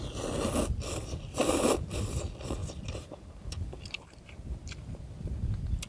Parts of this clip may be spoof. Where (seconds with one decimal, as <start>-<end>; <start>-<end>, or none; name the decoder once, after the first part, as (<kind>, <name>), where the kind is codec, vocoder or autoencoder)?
1.4-2.0 (vocoder, BigVGAN v2); 2.6-5.4